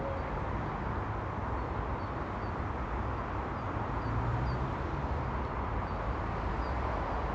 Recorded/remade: recorded